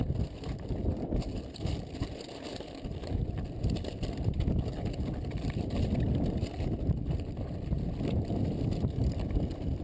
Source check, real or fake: fake